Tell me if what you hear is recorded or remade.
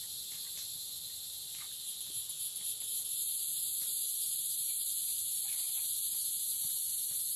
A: recorded